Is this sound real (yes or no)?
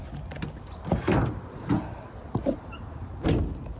yes